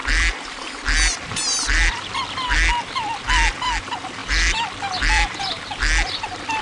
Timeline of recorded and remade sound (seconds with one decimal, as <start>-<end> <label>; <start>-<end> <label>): 0.0-6.6 recorded